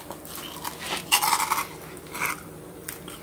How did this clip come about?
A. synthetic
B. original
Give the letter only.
B